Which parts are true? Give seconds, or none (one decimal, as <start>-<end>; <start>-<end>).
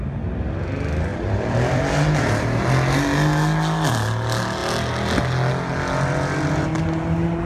0.0-1.1; 1.8-7.5